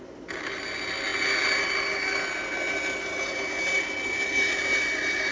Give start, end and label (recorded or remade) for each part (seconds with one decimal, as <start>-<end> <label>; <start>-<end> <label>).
0.0-5.3 recorded